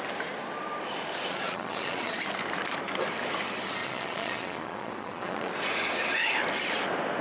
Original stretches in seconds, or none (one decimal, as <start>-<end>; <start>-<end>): 0.0-1.3; 2.2-3.8; 5.5-7.2